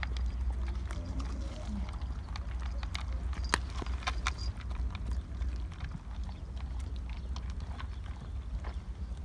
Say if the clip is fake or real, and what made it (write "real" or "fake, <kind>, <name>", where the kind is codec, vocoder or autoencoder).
real